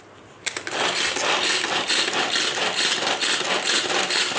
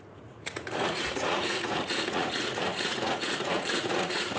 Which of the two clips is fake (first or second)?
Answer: second